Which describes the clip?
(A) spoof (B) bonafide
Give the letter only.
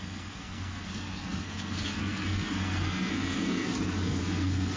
A